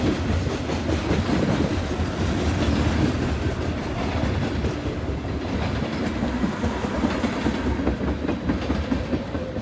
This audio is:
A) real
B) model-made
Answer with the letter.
A